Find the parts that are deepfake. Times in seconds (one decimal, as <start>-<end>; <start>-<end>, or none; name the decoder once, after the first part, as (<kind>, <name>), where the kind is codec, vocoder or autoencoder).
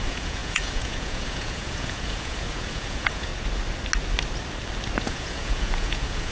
0.0-3.3 (vocoder, Vocos); 5.0-6.3